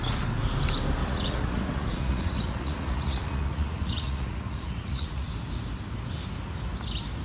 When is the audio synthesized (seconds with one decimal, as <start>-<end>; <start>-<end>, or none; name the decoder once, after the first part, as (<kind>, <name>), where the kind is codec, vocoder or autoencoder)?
1.0-5.3 (vocoder, Vocos)